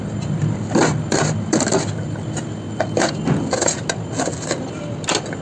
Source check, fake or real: real